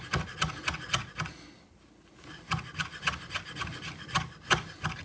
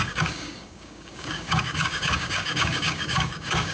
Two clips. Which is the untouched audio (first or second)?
first